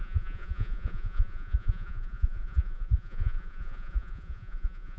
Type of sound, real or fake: fake